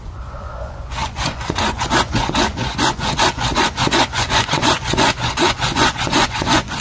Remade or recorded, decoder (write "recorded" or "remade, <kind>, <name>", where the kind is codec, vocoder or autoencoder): remade, vocoder, Vocos